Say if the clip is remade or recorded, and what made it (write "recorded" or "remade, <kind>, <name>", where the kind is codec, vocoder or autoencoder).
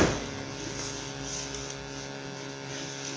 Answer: recorded